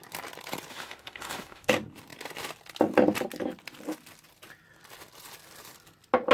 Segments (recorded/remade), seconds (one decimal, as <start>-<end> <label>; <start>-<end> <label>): 0.0-0.7 recorded; 0.7-1.7 remade; 1.7-6.3 recorded